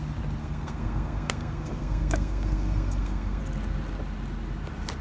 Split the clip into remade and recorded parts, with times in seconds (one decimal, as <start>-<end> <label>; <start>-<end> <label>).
0.0-0.4 recorded; 0.4-3.4 remade; 3.4-5.0 recorded